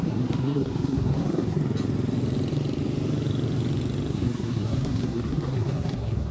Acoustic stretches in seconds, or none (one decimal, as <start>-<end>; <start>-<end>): 1.6-4.1